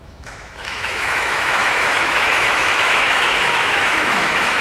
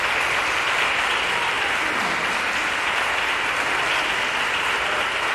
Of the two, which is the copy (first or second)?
first